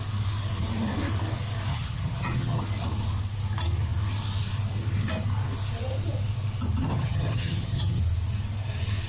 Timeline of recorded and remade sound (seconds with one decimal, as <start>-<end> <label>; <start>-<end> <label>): 0.0-1.7 recorded; 1.7-2.6 remade; 2.6-6.8 recorded; 6.8-8.0 remade; 8.0-9.1 recorded